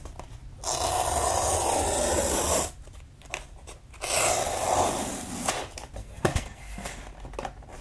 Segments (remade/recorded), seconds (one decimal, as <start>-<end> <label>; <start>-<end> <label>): 0.0-6.0 recorded; 6.0-7.0 remade; 7.0-7.8 recorded

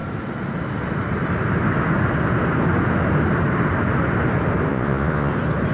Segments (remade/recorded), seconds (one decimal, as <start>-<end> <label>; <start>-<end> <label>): 0.0-4.7 recorded; 4.7-5.3 remade; 5.3-5.7 recorded

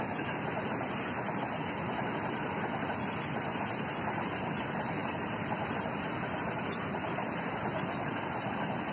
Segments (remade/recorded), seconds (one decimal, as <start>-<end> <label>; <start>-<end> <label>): 0.0-8.9 recorded

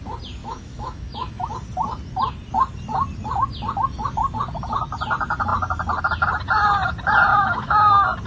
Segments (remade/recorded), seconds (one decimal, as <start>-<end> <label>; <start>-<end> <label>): 0.0-0.4 recorded; 0.4-1.5 remade; 1.5-7.3 recorded; 7.3-7.9 remade; 7.9-8.3 recorded

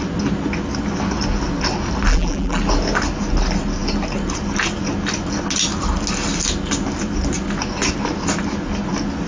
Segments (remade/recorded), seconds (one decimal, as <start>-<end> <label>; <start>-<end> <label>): 0.0-2.1 recorded; 2.1-2.6 remade; 2.6-9.3 recorded

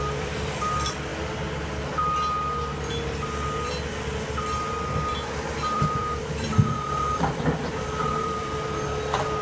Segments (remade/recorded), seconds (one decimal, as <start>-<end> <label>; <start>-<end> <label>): 0.0-1.1 remade; 1.1-5.4 recorded; 5.4-9.4 remade

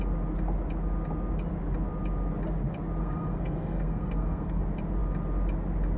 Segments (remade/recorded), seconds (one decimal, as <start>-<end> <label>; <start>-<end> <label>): 0.0-3.0 recorded; 3.0-4.6 remade; 4.6-6.0 recorded